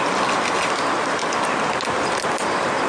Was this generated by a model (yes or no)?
no